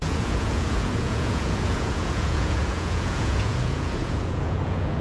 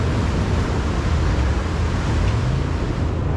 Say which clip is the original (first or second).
second